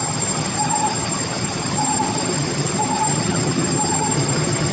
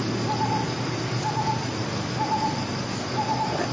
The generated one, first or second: first